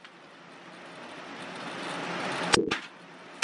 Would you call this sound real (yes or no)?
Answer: yes